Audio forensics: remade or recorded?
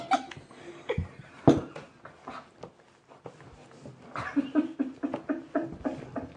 recorded